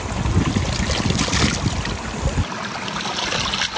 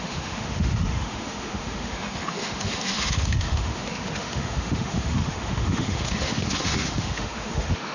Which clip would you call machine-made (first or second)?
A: second